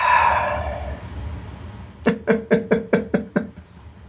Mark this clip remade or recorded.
recorded